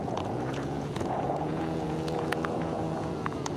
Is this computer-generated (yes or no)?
yes